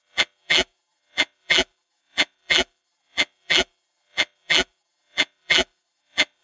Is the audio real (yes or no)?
no